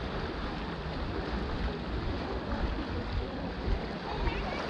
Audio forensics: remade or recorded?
recorded